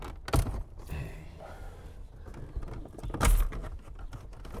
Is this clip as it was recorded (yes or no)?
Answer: yes